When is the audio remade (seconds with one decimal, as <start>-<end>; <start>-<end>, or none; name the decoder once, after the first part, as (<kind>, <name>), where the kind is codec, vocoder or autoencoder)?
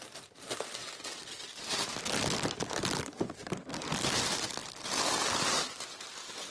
4.6-5.7 (vocoder, BigVGAN v2)